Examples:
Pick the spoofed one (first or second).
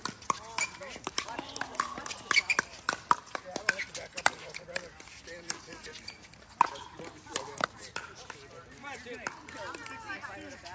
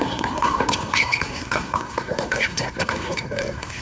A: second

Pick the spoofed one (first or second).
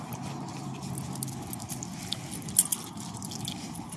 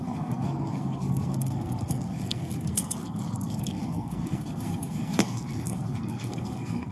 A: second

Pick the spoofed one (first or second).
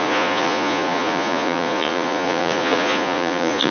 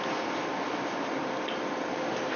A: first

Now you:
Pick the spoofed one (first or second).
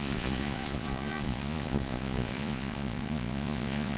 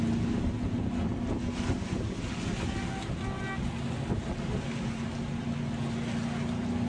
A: first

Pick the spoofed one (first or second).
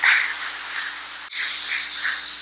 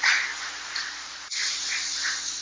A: second